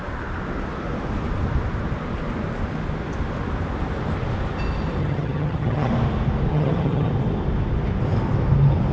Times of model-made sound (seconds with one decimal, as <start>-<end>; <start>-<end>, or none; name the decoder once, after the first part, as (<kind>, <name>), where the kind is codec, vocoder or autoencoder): 5.0-5.9 (vocoder, HiFi-GAN); 6.5-7.1